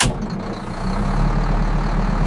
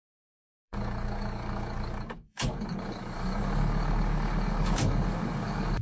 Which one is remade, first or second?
second